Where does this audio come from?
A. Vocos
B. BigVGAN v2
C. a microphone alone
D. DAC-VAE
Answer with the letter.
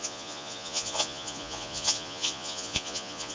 A